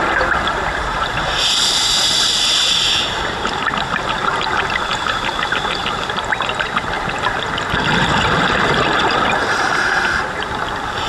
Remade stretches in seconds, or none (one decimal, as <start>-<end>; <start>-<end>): 0.9-1.8

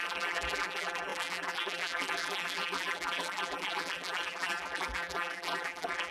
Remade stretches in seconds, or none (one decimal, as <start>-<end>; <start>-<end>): 0.0-6.1